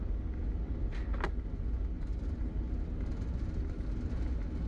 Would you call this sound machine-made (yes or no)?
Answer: no